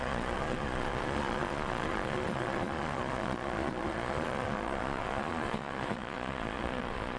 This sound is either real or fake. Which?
fake